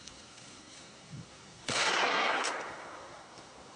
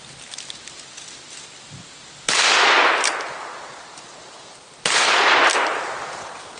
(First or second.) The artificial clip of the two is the first